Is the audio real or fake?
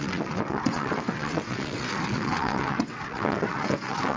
fake